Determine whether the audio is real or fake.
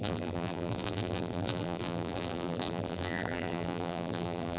fake